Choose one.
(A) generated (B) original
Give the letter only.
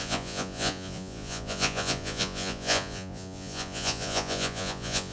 A